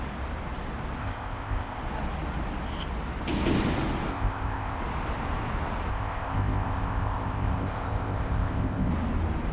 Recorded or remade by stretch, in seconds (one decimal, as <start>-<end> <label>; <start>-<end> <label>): 0.0-1.0 recorded; 1.0-1.8 remade; 1.8-4.1 recorded; 4.1-4.8 remade; 4.8-5.9 recorded; 5.9-8.9 remade; 8.9-9.5 recorded